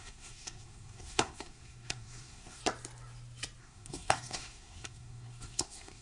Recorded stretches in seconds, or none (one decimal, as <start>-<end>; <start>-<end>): 2.6-3.6